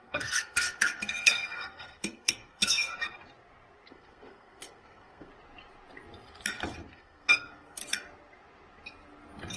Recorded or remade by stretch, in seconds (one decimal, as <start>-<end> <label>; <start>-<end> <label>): 0.0-2.9 remade; 2.9-3.9 recorded; 3.9-5.3 remade; 5.3-6.9 recorded; 6.9-7.8 remade; 7.8-9.6 recorded